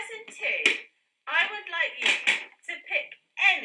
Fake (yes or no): no